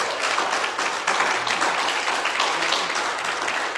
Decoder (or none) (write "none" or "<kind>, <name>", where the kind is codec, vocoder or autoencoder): none